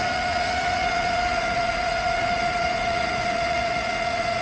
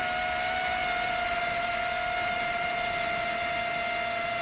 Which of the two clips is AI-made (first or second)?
first